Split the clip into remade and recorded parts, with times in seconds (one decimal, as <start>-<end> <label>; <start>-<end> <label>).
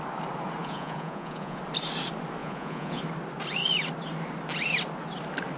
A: 0.0-0.6 recorded; 0.6-1.6 remade; 1.6-2.4 recorded; 2.4-3.0 remade; 3.0-5.6 recorded